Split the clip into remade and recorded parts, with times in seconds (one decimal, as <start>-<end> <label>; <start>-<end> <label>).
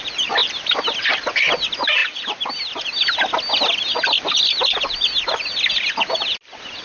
0.0-6.8 recorded